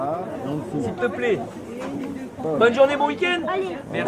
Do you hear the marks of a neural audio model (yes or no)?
no